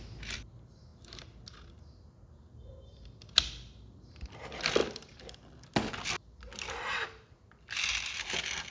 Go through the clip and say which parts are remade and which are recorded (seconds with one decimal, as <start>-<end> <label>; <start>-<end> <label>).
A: 0.0-8.7 recorded